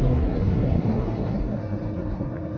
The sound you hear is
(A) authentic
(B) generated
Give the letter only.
B